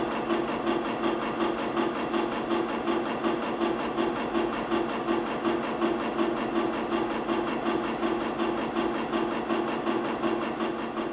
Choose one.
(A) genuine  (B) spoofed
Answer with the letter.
A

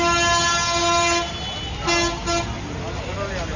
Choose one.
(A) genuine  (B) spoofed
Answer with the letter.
A